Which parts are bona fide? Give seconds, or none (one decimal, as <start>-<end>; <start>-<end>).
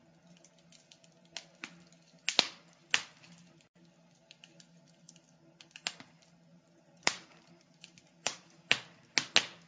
0.0-6.5; 8.7-9.7